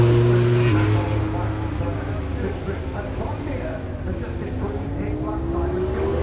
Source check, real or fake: real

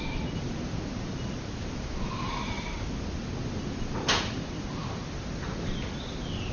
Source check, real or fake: real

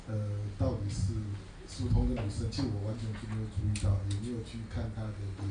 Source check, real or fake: real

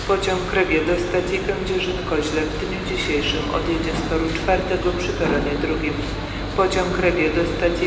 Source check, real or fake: real